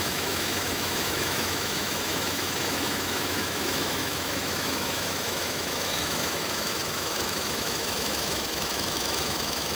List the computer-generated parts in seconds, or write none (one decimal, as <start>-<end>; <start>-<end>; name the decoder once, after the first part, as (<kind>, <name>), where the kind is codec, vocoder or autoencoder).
0.0-9.7 (autoencoder, DAC-VAE)